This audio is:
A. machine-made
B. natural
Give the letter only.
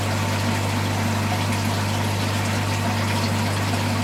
B